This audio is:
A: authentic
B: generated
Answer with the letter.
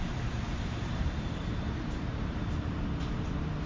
B